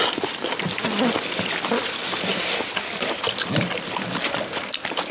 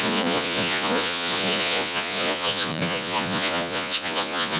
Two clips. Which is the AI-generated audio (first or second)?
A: second